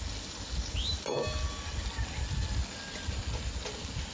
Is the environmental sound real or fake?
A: real